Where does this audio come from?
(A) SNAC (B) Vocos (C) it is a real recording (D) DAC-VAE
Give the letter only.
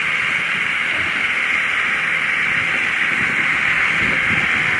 C